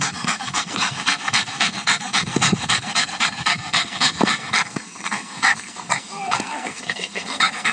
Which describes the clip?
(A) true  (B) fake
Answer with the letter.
B